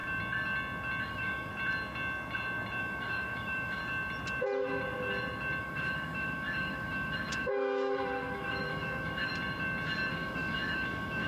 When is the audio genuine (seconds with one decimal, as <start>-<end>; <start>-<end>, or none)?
0.0-1.0; 1.5-2.8; 3.8-5.6; 9.3-10.1